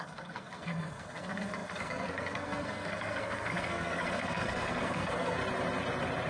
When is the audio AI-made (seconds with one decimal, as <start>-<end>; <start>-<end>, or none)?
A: 0.0-5.4